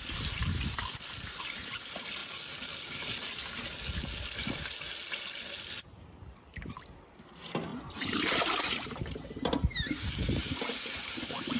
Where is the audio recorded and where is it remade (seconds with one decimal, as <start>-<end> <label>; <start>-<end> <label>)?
0.0-7.7 recorded; 7.7-11.6 remade